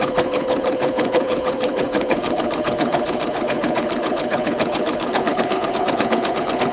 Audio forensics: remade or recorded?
remade